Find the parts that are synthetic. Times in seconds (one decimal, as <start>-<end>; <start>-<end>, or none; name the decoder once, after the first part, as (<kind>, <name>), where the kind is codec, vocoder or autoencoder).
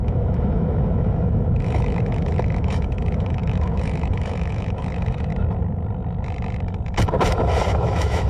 0.0-5.3 (autoencoder, DAC-VAE); 7.7-8.3